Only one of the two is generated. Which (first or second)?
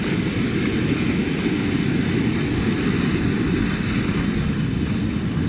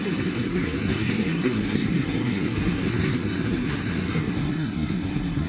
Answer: second